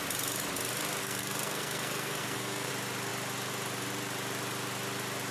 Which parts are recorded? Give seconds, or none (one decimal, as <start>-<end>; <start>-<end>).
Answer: 0.0-1.0; 2.7-5.3